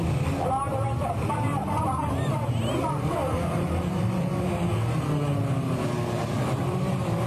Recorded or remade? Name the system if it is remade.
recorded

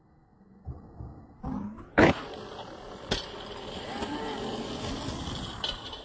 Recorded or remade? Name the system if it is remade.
recorded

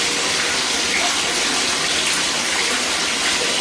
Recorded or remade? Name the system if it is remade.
recorded